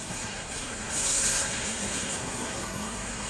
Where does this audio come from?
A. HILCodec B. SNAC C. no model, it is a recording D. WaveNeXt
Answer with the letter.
B